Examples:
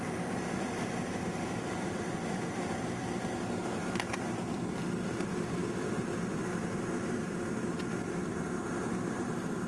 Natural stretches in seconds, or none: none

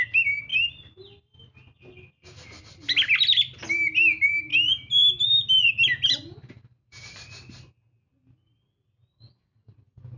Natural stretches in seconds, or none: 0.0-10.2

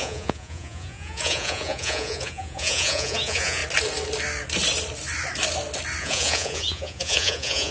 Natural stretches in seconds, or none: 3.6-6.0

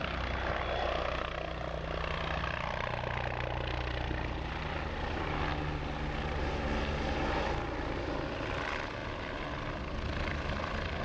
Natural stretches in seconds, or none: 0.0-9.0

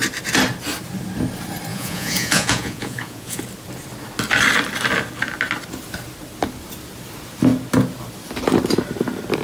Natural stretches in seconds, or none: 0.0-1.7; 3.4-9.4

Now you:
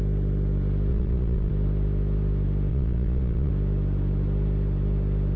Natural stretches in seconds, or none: 0.0-0.9; 1.5-2.7; 3.5-5.4

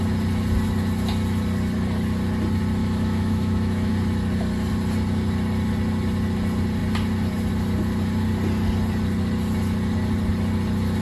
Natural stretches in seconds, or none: 0.0-2.8; 3.9-11.0

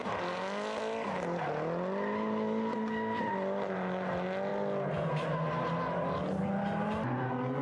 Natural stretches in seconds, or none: 0.0-7.6